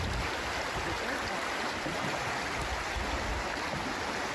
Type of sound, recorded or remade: recorded